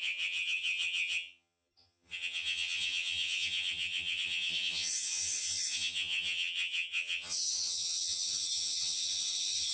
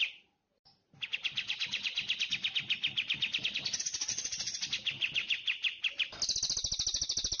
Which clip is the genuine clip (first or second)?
second